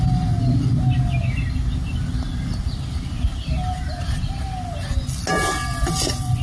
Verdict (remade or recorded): recorded